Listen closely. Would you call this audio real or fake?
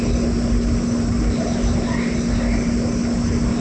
real